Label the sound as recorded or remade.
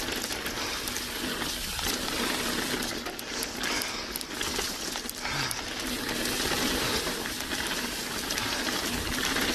recorded